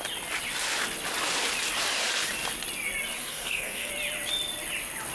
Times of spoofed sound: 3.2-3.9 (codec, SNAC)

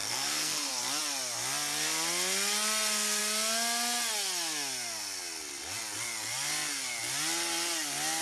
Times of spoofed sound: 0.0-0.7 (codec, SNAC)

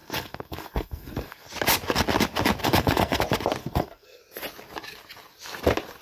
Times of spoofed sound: 0.0-1.5 (codec, SNAC); 2.6-3.2; 3.6-4.2

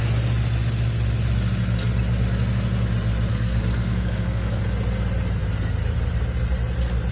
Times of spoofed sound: 3.3-4.6 (codec, SNAC)